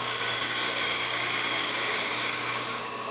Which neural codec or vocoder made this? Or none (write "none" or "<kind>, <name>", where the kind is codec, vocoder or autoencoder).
codec, DAC